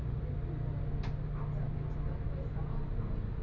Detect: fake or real real